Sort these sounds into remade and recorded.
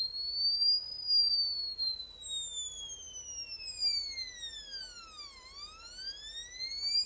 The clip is recorded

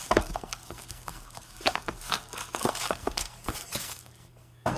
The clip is remade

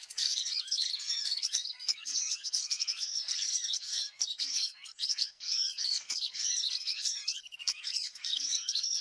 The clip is remade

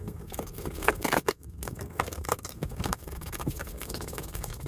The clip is remade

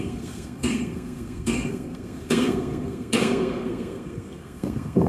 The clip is remade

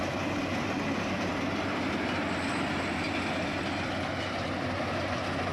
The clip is recorded